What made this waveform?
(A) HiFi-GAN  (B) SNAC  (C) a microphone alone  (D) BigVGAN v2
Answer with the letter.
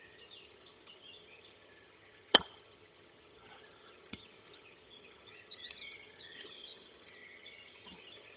A